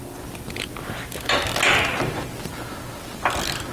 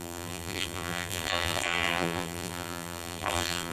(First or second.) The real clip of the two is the first